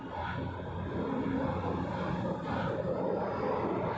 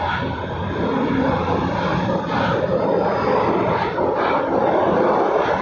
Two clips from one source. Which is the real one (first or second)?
first